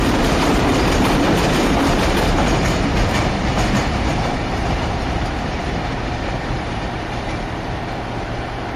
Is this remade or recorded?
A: remade